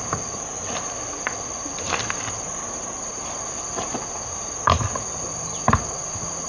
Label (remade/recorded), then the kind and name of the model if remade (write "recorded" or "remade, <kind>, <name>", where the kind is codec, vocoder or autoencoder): recorded